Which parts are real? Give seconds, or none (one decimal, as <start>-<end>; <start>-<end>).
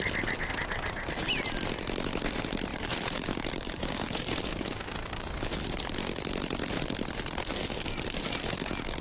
0.0-0.5; 1.5-2.7; 4.4-9.0